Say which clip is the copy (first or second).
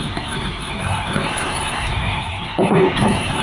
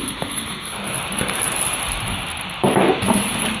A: first